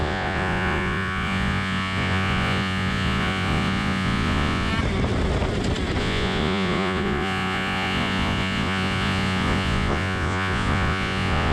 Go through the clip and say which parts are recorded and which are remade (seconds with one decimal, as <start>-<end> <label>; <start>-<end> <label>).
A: 0.0-4.7 remade; 4.7-6.0 recorded; 6.0-11.5 remade